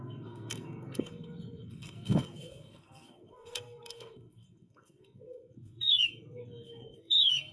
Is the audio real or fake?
fake